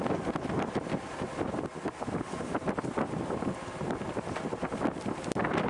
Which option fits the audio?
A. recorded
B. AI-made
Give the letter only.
A